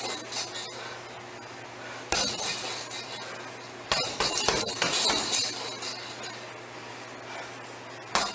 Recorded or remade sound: recorded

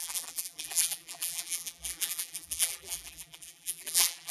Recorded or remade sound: remade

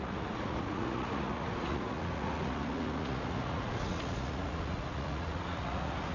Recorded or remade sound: remade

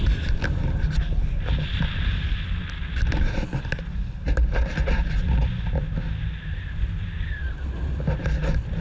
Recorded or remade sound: recorded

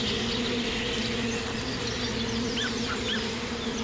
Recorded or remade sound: remade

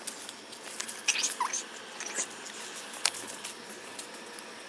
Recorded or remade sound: recorded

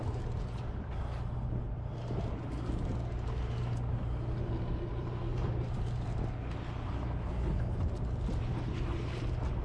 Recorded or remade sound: recorded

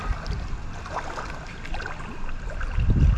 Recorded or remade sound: recorded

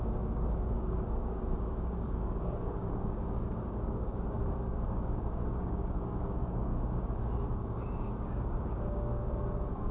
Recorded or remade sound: remade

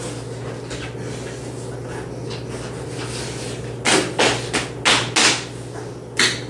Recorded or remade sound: recorded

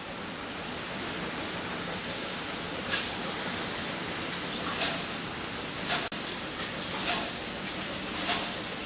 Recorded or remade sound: recorded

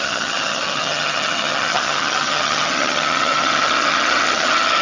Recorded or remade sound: remade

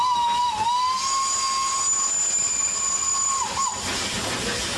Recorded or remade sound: recorded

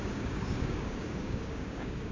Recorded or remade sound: remade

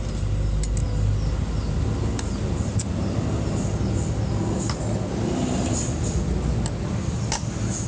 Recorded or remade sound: recorded